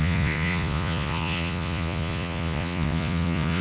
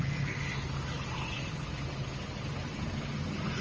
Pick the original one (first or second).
second